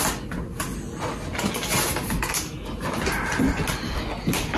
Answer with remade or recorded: recorded